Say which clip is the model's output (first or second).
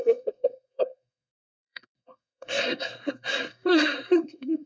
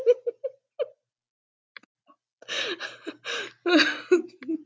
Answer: first